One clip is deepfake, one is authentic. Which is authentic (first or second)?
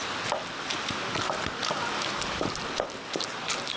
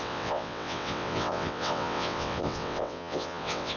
first